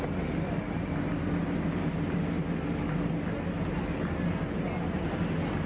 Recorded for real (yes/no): yes